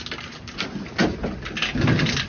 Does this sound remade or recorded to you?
recorded